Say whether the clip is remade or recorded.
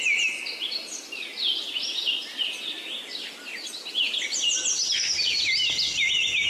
recorded